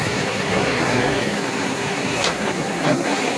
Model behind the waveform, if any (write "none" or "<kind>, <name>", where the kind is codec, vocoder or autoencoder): codec, SNAC